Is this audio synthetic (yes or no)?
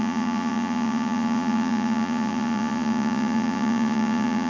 yes